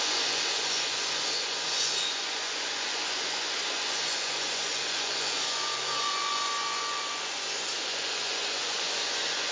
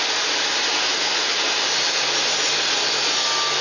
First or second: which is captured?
second